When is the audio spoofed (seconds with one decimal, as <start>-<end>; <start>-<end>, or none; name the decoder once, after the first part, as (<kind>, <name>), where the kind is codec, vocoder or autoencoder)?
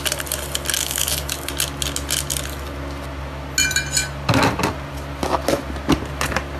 0.8-1.5 (codec, DAC)